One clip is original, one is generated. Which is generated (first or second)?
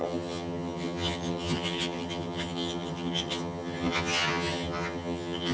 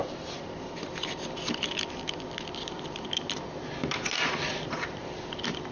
first